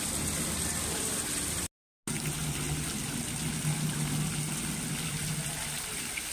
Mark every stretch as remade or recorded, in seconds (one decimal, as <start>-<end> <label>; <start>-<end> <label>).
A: 0.0-6.3 recorded